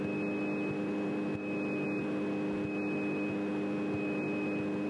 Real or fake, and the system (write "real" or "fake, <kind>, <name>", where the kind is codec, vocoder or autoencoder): real